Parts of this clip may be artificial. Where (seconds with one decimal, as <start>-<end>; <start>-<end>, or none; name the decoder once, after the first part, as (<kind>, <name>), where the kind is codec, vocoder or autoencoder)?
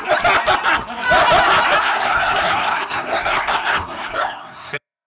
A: 1.8-5.1 (codec, SNAC)